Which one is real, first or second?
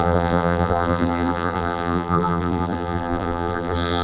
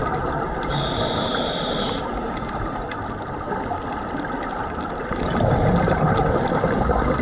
second